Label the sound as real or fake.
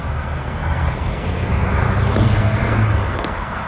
fake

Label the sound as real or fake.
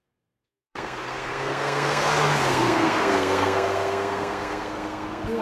fake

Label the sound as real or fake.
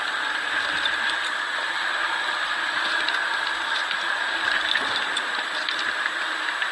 real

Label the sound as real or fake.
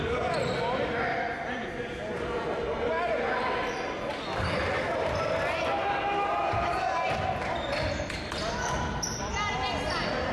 real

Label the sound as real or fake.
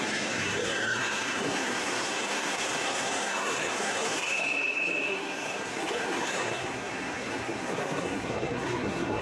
fake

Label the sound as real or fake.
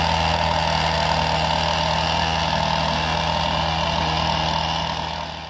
real